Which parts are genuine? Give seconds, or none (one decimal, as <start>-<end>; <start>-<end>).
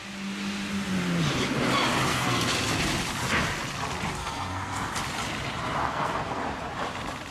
0.0-2.1; 2.8-4.2; 4.9-5.8; 6.4-7.3